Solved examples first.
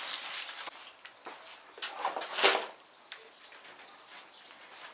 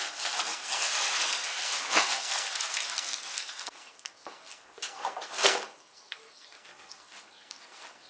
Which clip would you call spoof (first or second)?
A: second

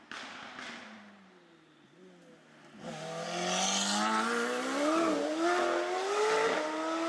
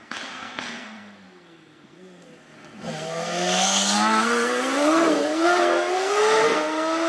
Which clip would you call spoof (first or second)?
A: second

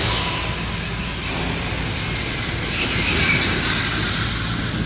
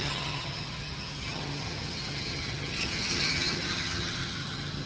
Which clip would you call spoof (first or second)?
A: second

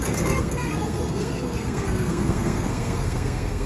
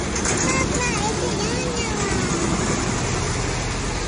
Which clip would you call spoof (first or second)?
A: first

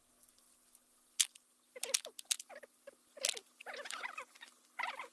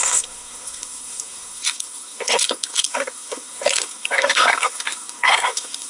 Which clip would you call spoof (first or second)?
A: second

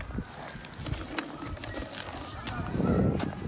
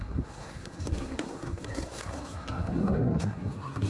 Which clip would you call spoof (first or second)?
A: second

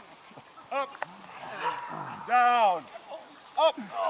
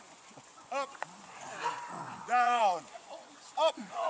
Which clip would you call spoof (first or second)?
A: second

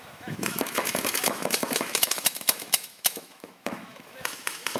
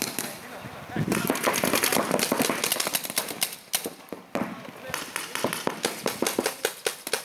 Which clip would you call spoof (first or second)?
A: first